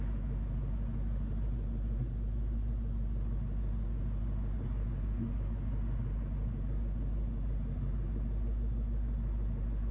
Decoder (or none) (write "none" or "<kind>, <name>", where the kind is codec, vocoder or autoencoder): none